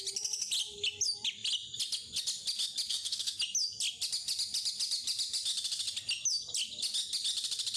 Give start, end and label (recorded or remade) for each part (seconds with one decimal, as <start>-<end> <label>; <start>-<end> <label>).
0.0-2.9 recorded; 2.9-3.4 remade; 3.4-7.8 recorded